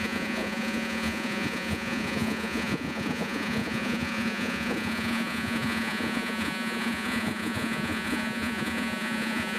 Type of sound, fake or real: fake